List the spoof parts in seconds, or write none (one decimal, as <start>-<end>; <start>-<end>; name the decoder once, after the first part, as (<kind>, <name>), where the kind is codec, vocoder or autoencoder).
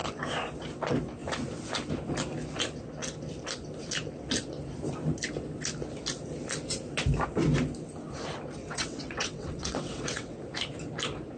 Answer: 8.6-10.4 (vocoder, WaveNeXt)